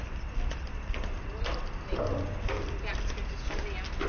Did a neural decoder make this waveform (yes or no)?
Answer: no